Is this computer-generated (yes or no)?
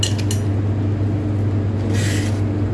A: no